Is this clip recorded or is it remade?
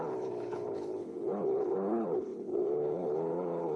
remade